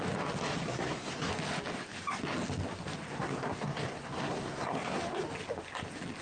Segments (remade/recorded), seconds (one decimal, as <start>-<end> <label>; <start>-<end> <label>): 0.0-0.7 recorded; 0.7-1.3 remade; 1.3-3.1 recorded; 3.1-5.0 remade; 5.0-6.2 recorded